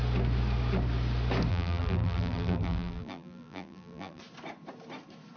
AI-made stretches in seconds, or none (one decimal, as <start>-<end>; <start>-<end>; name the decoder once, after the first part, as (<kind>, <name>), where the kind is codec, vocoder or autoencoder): 1.5-4.2 (vocoder, BigVGAN v2)